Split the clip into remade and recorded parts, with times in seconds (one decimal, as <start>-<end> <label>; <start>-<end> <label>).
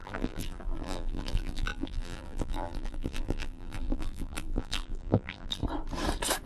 0.0-5.6 remade; 5.6-6.5 recorded